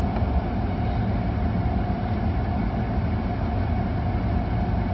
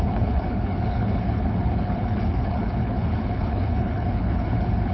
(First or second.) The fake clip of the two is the second